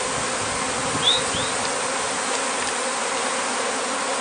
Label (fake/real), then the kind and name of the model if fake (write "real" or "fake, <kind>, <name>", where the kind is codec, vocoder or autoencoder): real